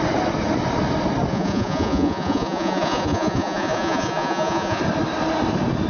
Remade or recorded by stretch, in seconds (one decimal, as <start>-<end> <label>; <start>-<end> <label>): 0.0-1.3 recorded; 1.3-4.8 remade; 4.8-5.9 recorded